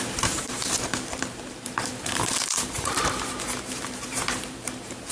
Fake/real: fake